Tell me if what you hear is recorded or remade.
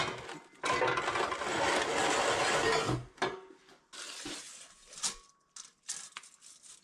recorded